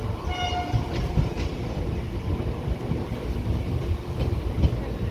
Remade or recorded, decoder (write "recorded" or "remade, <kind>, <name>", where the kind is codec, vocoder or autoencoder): recorded